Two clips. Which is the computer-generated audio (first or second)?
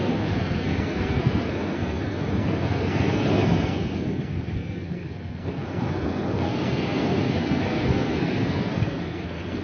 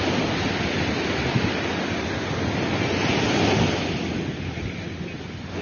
first